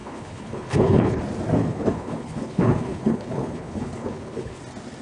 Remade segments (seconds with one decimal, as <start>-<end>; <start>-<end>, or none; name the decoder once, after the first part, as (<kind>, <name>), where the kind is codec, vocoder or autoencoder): 0.0-1.2 (codec, HILCodec); 1.6-4.6